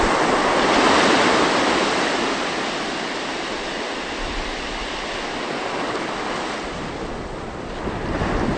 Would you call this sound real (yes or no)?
yes